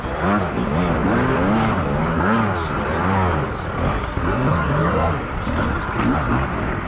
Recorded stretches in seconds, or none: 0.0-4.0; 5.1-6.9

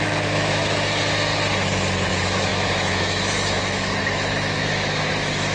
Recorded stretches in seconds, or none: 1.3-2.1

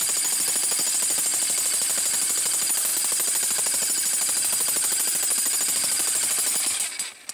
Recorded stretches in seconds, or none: 0.0-7.3